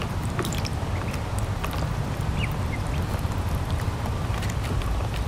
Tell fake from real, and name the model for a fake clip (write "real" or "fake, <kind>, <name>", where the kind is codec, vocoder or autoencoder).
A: fake, vocoder, BigVGAN v2